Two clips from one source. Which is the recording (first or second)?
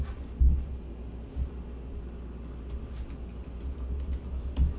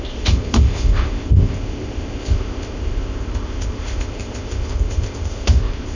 first